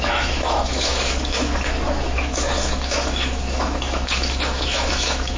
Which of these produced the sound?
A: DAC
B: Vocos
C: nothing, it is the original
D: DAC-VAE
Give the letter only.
D